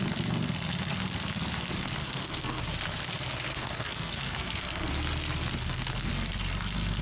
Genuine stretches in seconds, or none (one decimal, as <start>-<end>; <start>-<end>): 0.0-2.0; 2.6-3.5; 4.9-5.6; 6.1-7.0